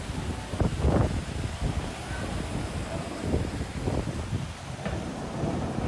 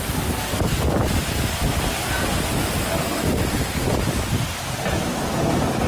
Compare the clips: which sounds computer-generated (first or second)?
first